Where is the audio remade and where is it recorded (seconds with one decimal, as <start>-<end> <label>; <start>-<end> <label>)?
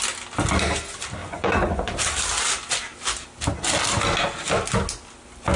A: 0.0-1.2 recorded; 1.2-2.0 remade; 2.0-5.6 recorded